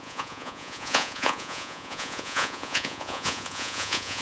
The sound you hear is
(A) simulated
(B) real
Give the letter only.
A